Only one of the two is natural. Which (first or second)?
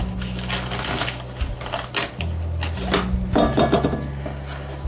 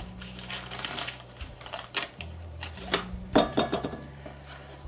first